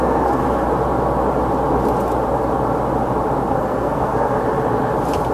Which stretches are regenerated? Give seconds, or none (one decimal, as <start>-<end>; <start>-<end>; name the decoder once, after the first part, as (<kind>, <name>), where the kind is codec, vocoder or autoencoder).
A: 0.0-0.4 (codec, SNAC); 3.5-4.4